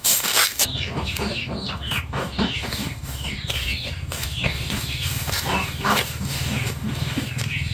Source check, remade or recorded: remade